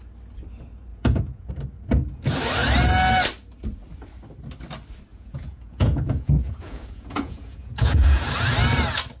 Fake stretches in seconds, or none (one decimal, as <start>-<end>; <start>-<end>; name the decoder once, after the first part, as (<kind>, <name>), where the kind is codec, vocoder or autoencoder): 0.9-1.5 (vocoder, Vocos); 5.1-8.3